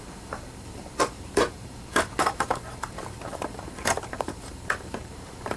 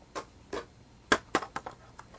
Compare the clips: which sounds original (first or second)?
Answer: second